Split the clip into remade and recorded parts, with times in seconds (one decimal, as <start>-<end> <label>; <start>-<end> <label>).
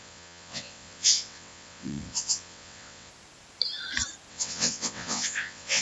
0.0-3.1 remade; 3.1-4.3 recorded; 4.3-5.8 remade